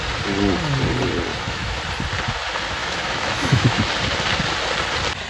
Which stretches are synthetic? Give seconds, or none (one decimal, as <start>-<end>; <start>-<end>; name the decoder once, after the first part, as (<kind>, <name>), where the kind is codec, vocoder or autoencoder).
1.3-1.8 (autoencoder, DAC-VAE); 2.8-3.9